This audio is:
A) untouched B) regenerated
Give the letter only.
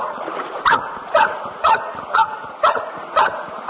B